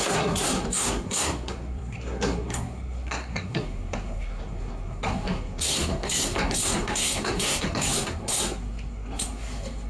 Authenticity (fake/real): fake